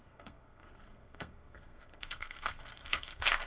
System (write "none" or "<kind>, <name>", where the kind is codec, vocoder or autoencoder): codec, SNAC